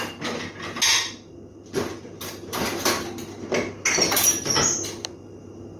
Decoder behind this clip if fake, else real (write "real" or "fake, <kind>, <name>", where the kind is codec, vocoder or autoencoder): real